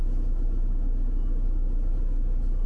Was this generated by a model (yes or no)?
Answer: no